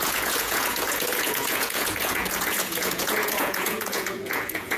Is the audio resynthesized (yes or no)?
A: yes